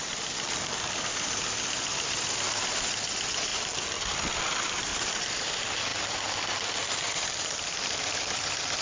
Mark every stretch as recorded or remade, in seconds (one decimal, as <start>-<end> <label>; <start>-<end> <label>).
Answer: 0.0-4.9 recorded; 4.9-5.5 remade; 5.5-8.8 recorded